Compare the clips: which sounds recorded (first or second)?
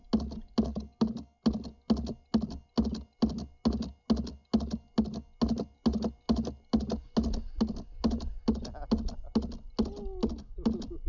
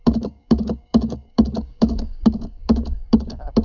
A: first